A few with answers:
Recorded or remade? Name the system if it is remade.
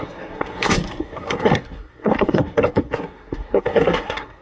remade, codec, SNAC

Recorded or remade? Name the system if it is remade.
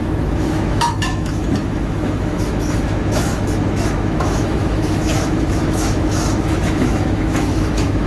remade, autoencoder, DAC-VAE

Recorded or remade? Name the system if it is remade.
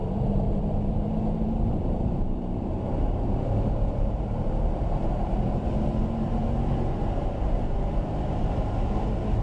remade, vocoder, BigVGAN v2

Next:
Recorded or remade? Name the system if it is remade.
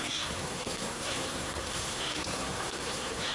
remade, codec, SNAC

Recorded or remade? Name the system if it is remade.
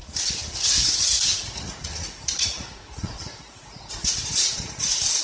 remade, vocoder, Vocos